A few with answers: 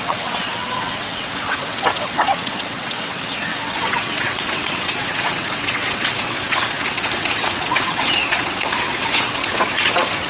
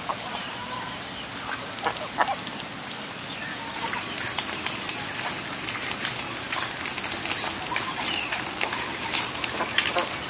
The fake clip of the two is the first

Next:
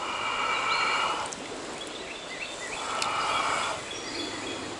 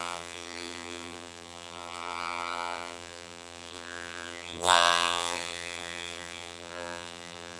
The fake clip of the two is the second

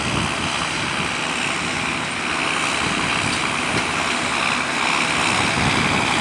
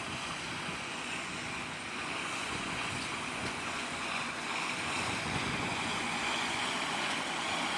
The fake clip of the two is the second